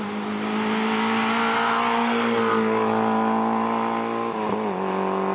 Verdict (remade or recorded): recorded